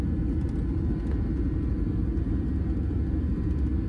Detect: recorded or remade remade